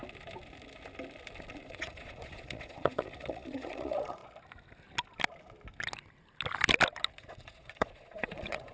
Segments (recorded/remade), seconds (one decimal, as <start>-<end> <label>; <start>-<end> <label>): 0.0-1.5 recorded; 1.5-4.2 remade; 4.2-7.2 recorded; 7.2-8.7 remade